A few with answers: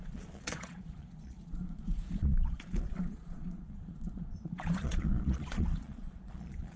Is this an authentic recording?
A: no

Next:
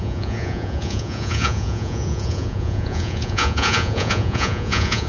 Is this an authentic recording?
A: no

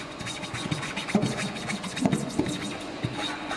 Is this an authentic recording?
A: no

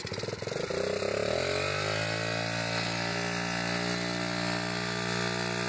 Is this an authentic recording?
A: yes